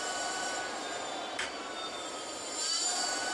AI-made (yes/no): yes